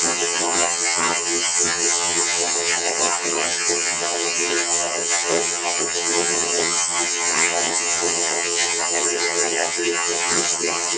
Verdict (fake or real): fake